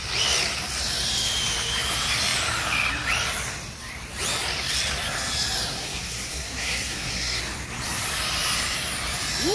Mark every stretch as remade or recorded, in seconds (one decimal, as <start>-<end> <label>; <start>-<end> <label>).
0.0-5.7 recorded; 5.7-7.4 remade; 7.4-9.5 recorded